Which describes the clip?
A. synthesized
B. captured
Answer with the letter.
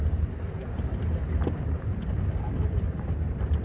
A